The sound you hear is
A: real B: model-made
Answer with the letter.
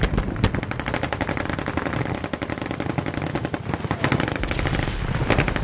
A